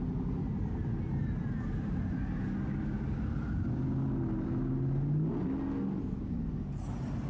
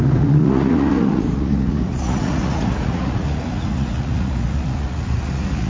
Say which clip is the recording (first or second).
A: first